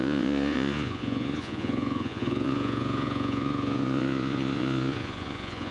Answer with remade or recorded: remade